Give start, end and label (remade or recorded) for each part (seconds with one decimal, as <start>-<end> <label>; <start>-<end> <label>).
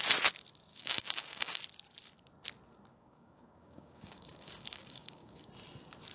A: 0.0-0.7 recorded; 0.7-1.6 remade; 1.6-2.9 recorded; 2.9-5.5 remade; 5.5-6.1 recorded